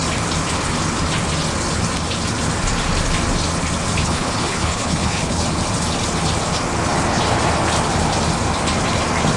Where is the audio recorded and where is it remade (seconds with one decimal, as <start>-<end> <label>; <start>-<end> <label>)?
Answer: 0.0-4.0 recorded; 4.0-5.4 remade; 5.4-9.4 recorded

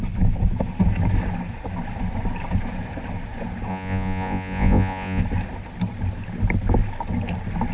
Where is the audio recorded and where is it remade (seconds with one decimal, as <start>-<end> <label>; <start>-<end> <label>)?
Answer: 0.0-3.7 recorded; 3.7-5.2 remade; 5.2-7.7 recorded

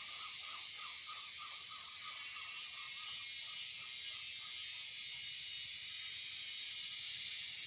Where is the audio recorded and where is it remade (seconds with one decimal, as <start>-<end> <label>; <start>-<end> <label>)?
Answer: 0.0-5.4 recorded; 5.4-7.3 remade; 7.3-7.7 recorded

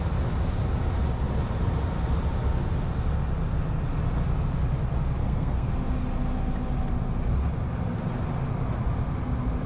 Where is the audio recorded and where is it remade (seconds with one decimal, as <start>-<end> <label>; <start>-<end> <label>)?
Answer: 0.0-5.2 recorded; 5.2-5.7 remade; 5.7-9.7 recorded

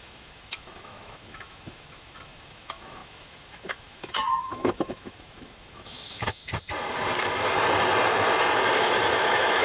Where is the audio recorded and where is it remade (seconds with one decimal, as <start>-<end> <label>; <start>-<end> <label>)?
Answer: 0.0-6.4 remade; 6.4-8.8 recorded; 8.8-9.6 remade

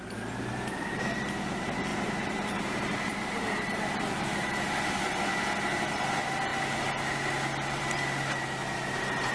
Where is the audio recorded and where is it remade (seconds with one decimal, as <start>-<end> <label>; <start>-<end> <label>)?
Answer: 0.0-1.9 recorded; 1.9-3.8 remade; 3.8-9.3 recorded

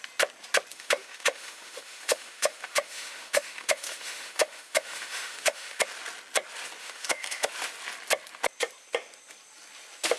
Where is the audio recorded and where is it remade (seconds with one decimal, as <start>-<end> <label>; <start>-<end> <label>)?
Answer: 0.0-0.7 recorded; 0.7-5.8 remade; 5.8-6.8 recorded; 6.8-7.5 remade; 7.5-10.2 recorded

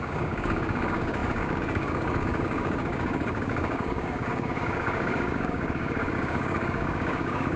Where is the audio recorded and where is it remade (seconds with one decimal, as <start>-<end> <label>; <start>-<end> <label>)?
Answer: 0.0-7.6 remade